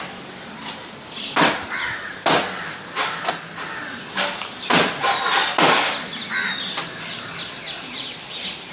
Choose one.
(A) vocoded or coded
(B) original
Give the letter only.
B